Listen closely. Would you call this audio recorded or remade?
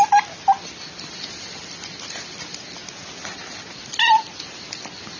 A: recorded